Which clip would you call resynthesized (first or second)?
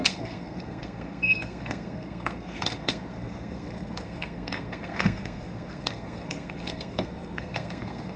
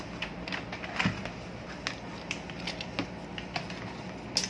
first